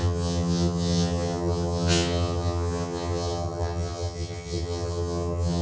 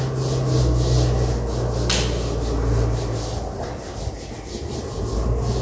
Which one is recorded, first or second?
second